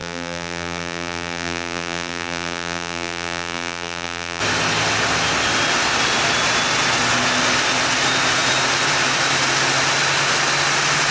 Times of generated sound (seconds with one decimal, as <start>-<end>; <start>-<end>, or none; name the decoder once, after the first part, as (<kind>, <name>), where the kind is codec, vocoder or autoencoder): 0.0-4.4 (vocoder, BigVGAN v2)